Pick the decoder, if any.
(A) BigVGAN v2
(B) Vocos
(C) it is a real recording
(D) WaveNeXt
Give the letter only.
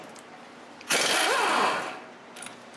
C